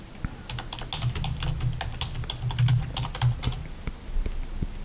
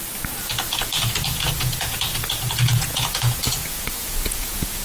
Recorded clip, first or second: first